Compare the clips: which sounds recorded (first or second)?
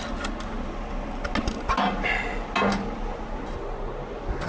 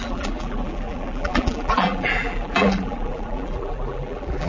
first